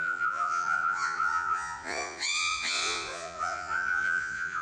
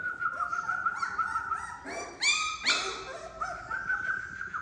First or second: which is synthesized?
first